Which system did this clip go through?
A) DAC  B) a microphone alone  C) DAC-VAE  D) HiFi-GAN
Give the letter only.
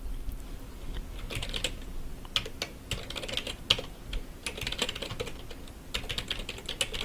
B